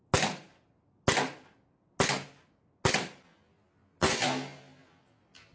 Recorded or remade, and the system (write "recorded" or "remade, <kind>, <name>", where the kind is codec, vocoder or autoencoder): recorded